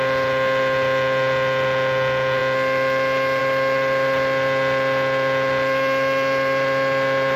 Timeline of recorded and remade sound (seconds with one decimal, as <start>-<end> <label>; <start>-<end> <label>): 0.0-7.4 recorded